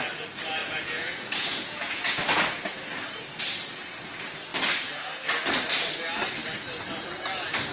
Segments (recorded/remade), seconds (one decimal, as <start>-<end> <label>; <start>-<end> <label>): 0.0-0.6 recorded; 0.6-2.2 remade; 2.2-7.7 recorded